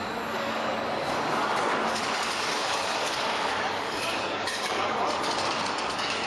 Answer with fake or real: fake